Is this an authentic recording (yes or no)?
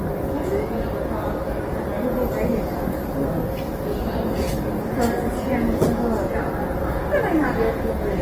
yes